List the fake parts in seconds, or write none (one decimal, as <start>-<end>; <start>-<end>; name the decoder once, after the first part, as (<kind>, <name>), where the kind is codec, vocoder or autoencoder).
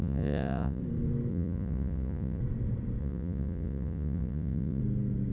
0.0-0.8 (vocoder, Vocos); 1.3-2.4; 3.0-4.8